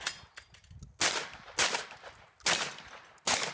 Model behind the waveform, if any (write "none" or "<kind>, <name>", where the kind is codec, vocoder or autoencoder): none